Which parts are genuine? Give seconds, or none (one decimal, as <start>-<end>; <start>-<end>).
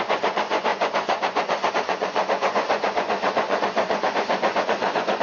none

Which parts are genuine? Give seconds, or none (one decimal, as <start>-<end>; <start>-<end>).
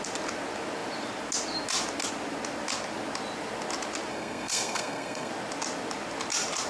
0.0-4.1; 5.3-6.7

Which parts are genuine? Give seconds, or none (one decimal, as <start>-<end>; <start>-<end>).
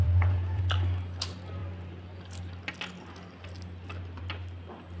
0.6-5.0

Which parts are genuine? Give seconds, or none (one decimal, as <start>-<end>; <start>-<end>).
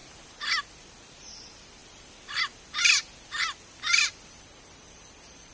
0.0-5.5